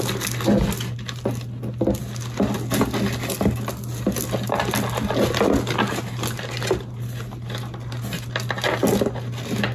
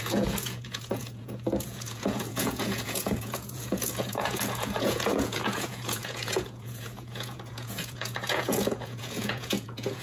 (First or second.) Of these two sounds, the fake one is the second